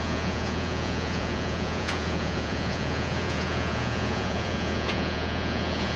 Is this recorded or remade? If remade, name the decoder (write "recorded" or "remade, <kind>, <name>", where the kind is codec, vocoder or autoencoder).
remade, vocoder, Vocos